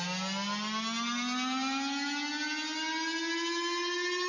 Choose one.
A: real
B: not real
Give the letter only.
A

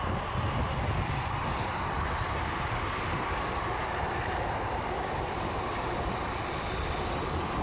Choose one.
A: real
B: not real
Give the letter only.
A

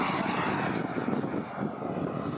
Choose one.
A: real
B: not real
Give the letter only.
A